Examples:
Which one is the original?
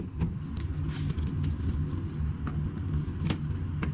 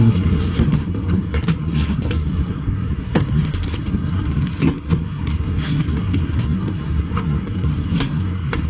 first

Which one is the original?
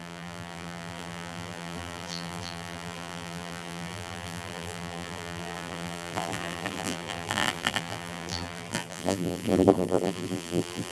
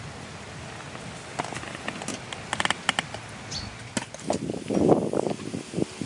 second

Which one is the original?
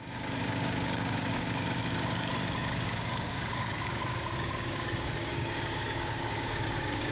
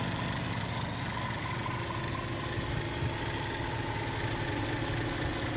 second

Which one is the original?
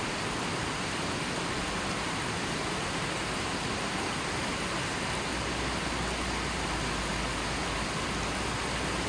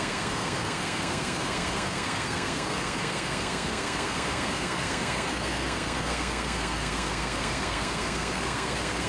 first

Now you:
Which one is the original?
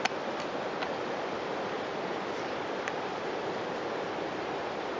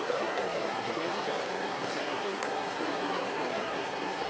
first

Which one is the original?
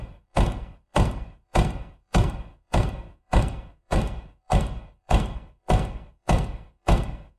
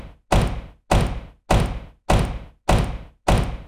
second